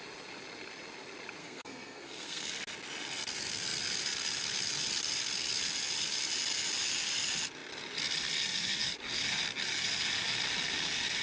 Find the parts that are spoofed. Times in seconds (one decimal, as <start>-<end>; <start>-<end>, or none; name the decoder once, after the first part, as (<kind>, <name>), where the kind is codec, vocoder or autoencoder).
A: 1.4-2.5 (codec, SNAC)